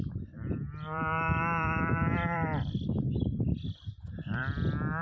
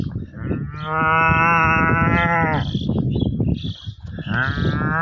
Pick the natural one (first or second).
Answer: second